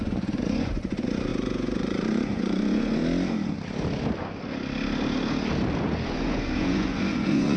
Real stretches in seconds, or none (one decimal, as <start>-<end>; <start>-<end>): 3.0-5.8